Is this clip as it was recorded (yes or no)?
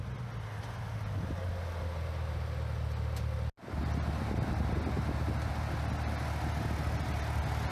yes